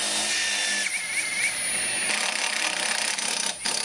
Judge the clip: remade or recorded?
recorded